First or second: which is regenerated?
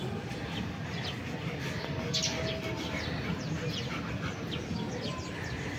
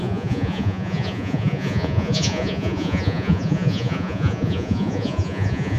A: second